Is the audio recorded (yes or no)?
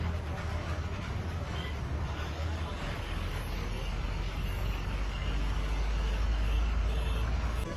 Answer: no